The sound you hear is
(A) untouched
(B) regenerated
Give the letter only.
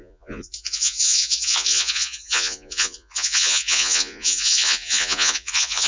B